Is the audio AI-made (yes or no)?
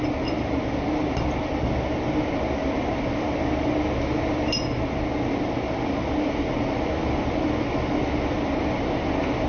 no